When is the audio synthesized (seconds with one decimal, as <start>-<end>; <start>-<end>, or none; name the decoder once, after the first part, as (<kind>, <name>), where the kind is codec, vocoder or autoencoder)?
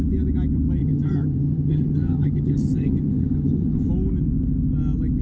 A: 0.8-3.9 (vocoder, HiFi-GAN)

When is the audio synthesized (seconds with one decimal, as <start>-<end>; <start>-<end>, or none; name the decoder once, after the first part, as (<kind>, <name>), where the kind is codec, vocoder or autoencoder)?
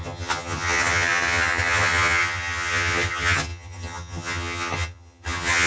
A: 0.0-5.7 (vocoder, HiFi-GAN)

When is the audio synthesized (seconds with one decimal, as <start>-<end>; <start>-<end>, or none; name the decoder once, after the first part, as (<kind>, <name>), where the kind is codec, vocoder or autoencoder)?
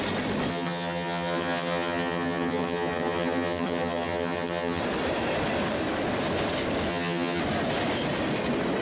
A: 0.5-4.8 (vocoder, HiFi-GAN); 6.9-7.4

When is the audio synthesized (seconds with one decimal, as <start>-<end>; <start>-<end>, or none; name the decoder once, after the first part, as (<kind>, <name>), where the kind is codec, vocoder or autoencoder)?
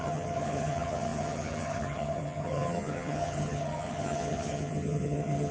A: 0.0-5.5 (vocoder, HiFi-GAN)